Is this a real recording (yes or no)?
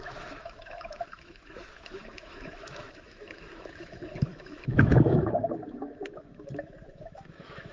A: no